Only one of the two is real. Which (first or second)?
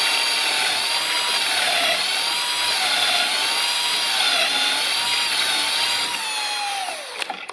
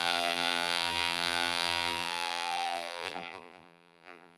first